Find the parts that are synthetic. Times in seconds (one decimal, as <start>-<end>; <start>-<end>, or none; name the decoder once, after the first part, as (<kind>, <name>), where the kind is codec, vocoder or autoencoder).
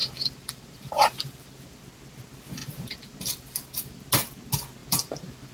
0.0-1.8 (vocoder, BigVGAN v2); 2.6-4.0; 4.8-5.5